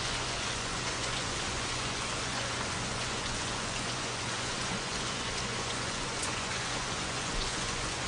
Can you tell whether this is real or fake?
fake